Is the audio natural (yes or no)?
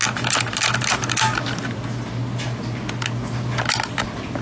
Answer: yes